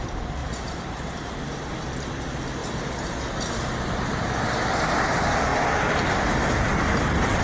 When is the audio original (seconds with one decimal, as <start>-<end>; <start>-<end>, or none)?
0.0-0.4; 1.7-7.4